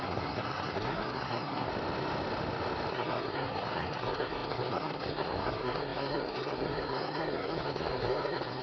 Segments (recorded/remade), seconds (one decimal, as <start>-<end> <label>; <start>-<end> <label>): 0.0-1.7 remade; 1.7-2.9 recorded; 2.9-8.6 remade